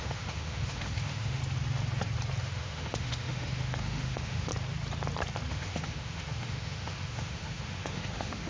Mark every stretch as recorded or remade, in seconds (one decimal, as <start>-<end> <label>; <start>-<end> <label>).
0.0-1.4 remade; 1.4-2.4 recorded; 2.4-4.5 remade; 4.5-5.5 recorded; 5.5-8.5 remade